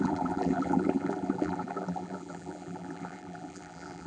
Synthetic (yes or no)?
yes